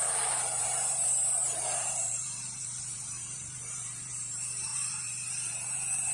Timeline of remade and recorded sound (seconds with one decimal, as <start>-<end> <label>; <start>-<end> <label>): 0.0-6.1 remade